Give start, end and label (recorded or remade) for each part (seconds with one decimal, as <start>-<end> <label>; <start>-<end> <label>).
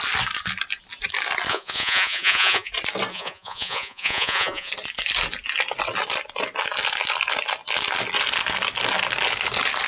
0.0-1.5 recorded; 1.5-2.7 remade; 2.7-3.1 recorded; 3.1-4.7 remade; 4.7-9.9 recorded